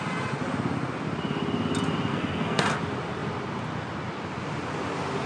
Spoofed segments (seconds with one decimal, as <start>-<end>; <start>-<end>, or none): 2.1-2.6